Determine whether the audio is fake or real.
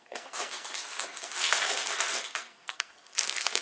fake